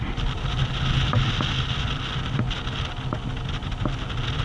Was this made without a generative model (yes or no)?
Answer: yes